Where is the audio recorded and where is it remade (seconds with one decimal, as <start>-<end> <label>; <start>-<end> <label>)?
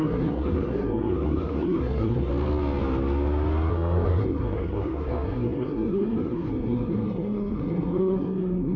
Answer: 0.0-2.3 remade; 2.3-3.7 recorded; 3.7-8.8 remade